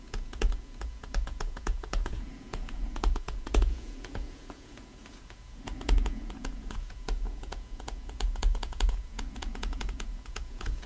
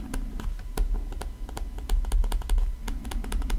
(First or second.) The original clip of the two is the second